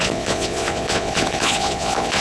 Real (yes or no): no